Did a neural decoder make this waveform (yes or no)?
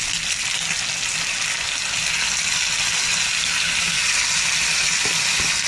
no